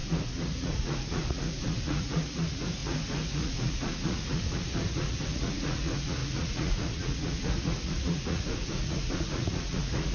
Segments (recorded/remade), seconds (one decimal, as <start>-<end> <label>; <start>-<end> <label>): 0.0-10.1 remade